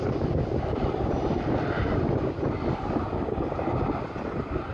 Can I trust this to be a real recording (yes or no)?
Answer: yes